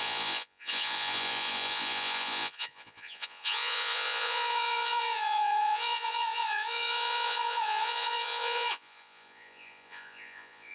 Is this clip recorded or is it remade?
remade